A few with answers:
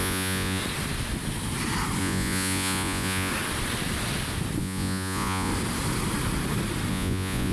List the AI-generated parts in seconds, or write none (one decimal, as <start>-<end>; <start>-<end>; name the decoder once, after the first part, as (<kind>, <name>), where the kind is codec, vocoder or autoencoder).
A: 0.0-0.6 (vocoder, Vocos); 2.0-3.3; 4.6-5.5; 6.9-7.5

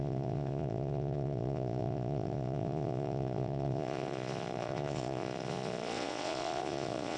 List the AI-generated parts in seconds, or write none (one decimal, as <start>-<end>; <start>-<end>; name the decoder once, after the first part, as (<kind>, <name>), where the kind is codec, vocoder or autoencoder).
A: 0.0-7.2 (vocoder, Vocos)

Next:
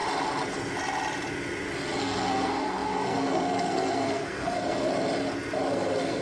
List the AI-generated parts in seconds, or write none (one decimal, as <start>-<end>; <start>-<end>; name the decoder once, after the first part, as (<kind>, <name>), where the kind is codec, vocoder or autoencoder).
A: 2.0-4.9 (codec, SNAC); 5.7-6.2

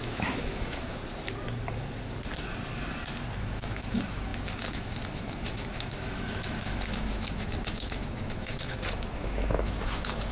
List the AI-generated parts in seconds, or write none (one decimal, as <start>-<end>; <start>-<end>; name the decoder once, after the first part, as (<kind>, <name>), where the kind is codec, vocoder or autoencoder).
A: 0.0-1.0 (autoencoder, DAC-VAE); 3.4-10.3